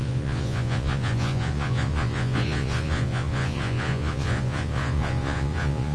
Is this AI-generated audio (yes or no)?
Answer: yes